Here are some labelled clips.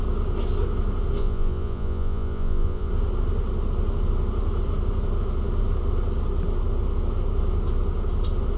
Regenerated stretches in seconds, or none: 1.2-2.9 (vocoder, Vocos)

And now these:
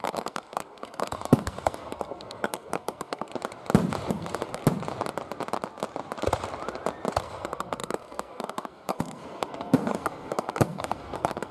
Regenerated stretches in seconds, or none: 0.0-3.3 (codec, SNAC); 4.1-4.6; 7.2-11.5

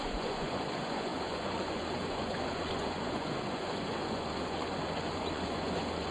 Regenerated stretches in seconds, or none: 0.0-6.1 (vocoder, Vocos)

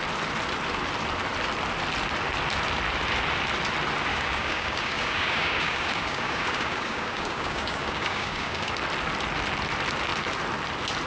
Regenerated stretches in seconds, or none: 4.1-8.7 (codec, DAC)